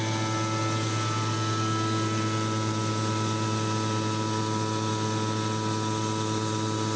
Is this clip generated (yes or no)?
no